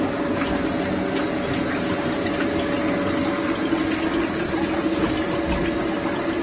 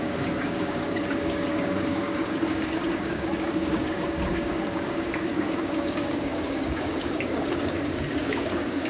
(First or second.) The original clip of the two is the first